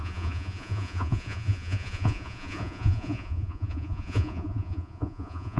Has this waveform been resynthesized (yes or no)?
yes